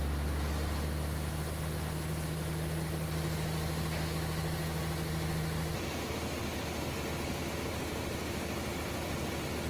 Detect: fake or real real